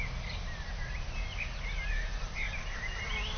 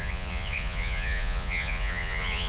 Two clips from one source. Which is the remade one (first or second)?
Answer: second